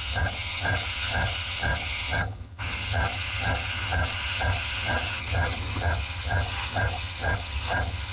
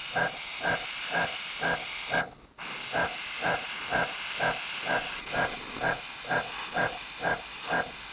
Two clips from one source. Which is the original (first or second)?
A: second